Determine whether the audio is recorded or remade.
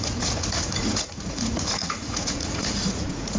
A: remade